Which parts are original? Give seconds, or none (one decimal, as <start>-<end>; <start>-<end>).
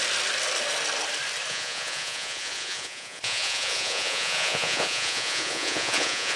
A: 0.0-1.5